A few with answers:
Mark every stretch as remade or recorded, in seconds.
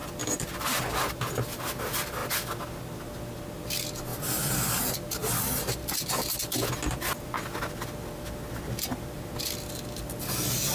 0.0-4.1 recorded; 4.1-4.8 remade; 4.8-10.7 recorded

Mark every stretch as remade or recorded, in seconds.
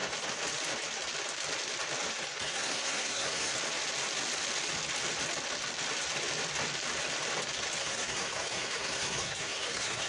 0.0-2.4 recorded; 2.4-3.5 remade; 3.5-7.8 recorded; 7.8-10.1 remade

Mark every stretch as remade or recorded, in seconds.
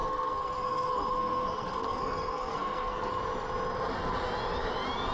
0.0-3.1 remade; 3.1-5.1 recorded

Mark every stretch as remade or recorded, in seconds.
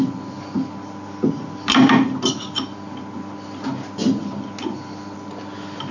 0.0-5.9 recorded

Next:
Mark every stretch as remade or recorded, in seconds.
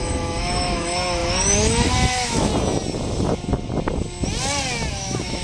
0.0-2.5 remade; 2.5-4.9 recorded; 4.9-5.4 remade